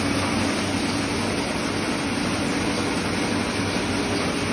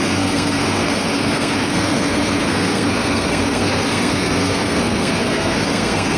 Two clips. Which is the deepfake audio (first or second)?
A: second